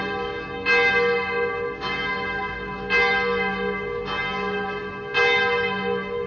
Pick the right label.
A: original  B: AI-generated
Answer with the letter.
A